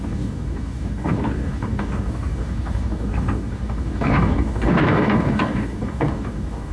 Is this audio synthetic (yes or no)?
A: yes